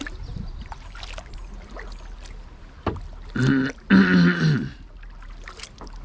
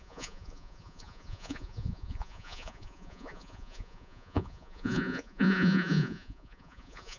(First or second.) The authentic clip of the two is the first